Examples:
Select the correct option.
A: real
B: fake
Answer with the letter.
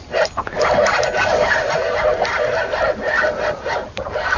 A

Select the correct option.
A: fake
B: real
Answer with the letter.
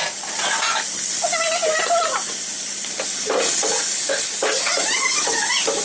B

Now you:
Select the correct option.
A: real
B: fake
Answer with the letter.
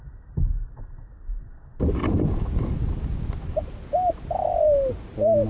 A